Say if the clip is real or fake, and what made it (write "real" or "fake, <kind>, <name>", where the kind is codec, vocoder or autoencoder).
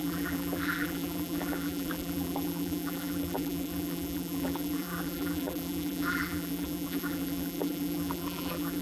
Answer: fake, vocoder, BigVGAN v2